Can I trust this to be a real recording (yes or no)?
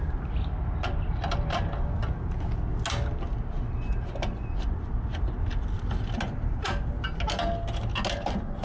yes